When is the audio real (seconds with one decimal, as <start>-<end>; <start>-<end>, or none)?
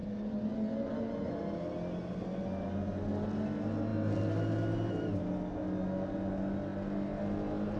0.0-7.8